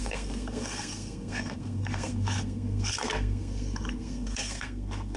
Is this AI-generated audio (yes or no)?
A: yes